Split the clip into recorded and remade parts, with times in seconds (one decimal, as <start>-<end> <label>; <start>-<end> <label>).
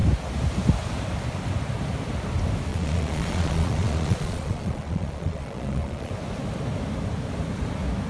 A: 0.0-2.7 recorded; 2.7-6.1 remade; 6.1-8.1 recorded